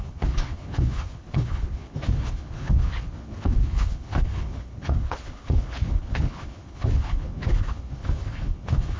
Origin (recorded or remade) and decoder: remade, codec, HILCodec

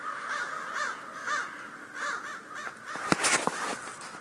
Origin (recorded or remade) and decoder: recorded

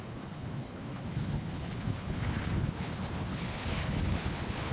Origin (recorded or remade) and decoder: remade, codec, HILCodec